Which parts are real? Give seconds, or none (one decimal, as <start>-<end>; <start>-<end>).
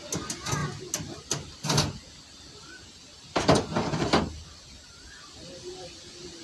0.0-6.4